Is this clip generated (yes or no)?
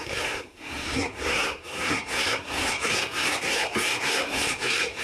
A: yes